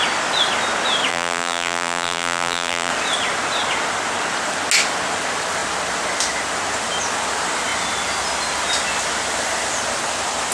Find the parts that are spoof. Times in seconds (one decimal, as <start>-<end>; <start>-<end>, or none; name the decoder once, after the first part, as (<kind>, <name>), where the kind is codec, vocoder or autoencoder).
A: 1.1-2.9 (vocoder, BigVGAN v2)